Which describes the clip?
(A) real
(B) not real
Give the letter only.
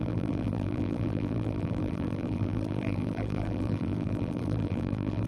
B